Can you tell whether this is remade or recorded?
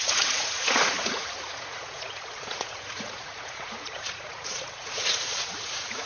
remade